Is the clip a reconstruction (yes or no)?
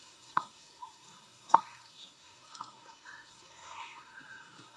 yes